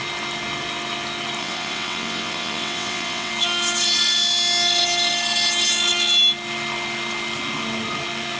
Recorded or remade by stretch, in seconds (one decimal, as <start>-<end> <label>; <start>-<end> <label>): 0.0-1.4 recorded; 1.4-3.3 remade; 3.3-8.4 recorded